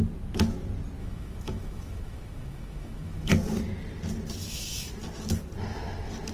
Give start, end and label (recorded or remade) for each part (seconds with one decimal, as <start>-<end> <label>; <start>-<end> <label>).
0.0-1.0 recorded; 1.0-3.3 remade; 3.3-4.4 recorded; 4.4-4.9 remade; 4.9-6.3 recorded